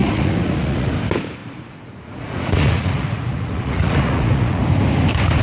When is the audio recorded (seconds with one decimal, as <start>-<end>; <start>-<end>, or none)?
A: 0.9-1.4; 4.6-5.4